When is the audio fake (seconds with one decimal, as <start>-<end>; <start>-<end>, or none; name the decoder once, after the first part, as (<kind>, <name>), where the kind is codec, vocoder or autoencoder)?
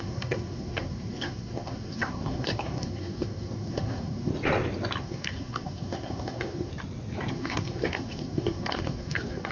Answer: 0.0-4.3 (codec, SNAC); 5.0-6.7; 7.3-9.5